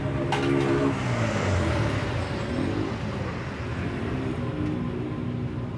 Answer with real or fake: real